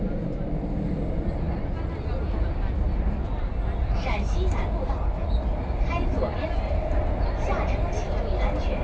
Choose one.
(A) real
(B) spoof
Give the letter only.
A